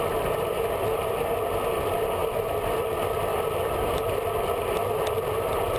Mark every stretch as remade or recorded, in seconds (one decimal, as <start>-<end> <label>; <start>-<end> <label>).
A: 0.0-5.8 recorded